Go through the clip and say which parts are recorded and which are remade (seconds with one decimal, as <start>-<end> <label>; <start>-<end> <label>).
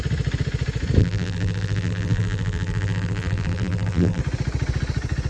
0.0-1.0 recorded; 1.0-4.2 remade; 4.2-5.3 recorded